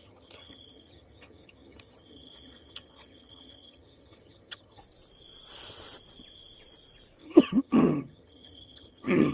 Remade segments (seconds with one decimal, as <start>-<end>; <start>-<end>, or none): 0.0-4.8; 7.2-9.3